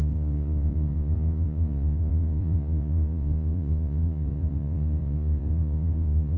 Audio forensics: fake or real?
fake